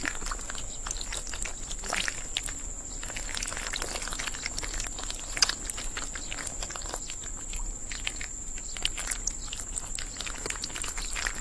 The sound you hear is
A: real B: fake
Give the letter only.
A